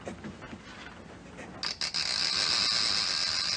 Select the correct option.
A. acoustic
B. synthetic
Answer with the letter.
A